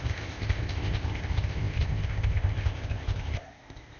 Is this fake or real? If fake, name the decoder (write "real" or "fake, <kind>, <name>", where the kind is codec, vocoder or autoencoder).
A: fake, codec, ZipCodec